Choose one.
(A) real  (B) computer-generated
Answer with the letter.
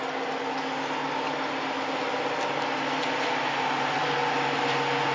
A